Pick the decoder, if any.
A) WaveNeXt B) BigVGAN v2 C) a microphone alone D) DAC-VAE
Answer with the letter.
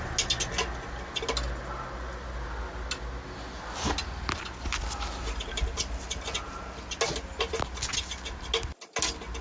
C